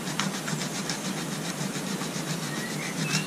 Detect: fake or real real